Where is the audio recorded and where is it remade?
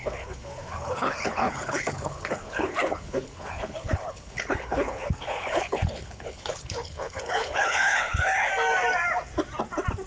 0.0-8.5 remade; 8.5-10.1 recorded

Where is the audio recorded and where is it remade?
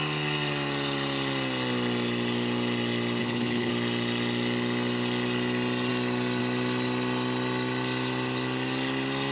0.0-3.2 recorded; 3.2-3.7 remade; 3.7-9.3 recorded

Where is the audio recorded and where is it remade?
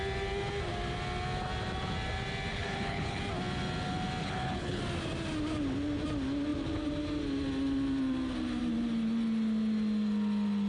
0.0-2.5 recorded; 2.5-3.2 remade; 3.2-4.2 recorded; 4.2-4.8 remade; 4.8-10.7 recorded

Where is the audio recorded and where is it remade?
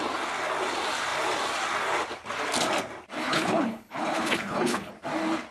0.0-3.2 recorded; 3.2-4.9 remade; 4.9-5.5 recorded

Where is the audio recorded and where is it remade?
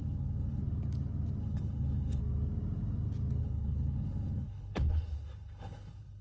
0.0-0.6 remade; 0.6-1.4 recorded; 1.4-2.2 remade; 2.2-3.4 recorded; 3.4-6.2 remade